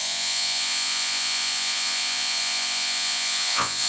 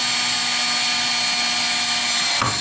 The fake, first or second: first